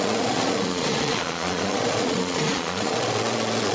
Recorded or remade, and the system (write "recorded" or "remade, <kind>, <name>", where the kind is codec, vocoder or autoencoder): remade, vocoder, Vocos